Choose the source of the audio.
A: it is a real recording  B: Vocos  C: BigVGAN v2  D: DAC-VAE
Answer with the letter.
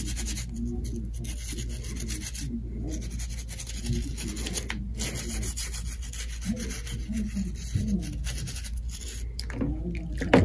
A